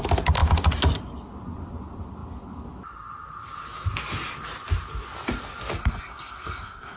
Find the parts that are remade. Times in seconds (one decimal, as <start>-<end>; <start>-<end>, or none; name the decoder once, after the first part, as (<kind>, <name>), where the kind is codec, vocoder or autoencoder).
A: 5.8-7.0 (codec, SNAC)